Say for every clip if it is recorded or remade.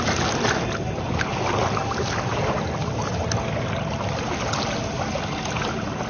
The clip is recorded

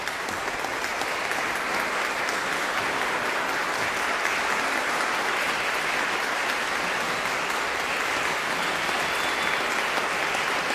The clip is recorded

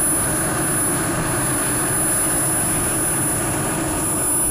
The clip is recorded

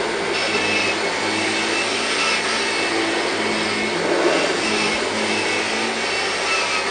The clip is recorded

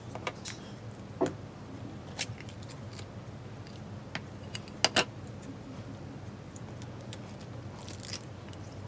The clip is recorded